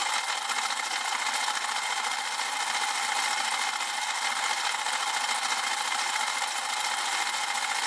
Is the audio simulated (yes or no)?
no